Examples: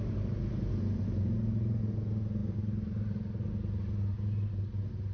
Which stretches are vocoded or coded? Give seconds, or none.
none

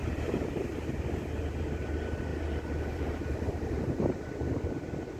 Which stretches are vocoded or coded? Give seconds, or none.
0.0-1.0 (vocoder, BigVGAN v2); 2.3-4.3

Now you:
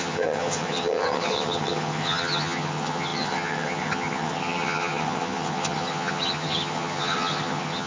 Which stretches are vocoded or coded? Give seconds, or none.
0.0-7.9 (vocoder, HiFi-GAN)

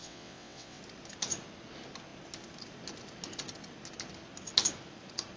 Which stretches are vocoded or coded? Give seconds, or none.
0.0-0.8 (vocoder, WaveNeXt)

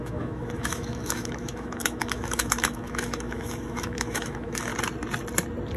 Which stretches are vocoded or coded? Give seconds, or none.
0.0-4.7 (autoencoder, DAC-VAE)

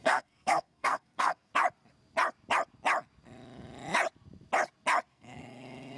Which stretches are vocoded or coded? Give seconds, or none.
0.0-1.5 (codec, SNAC); 5.1-6.0

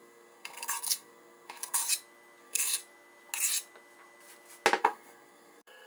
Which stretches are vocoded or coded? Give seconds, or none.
0.0-1.8 (codec, SNAC); 2.4-2.8; 4.8-5.9

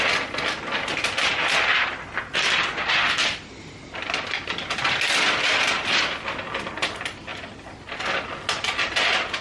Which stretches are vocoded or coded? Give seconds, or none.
7.3-7.9 (vocoder, BigVGAN v2)